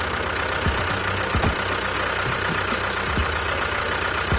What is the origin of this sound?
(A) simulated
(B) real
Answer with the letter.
B